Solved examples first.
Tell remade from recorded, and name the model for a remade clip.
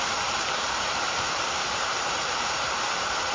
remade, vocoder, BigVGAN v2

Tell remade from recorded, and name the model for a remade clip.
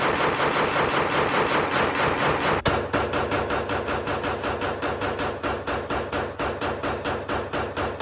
recorded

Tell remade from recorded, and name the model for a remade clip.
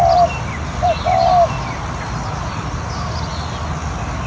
recorded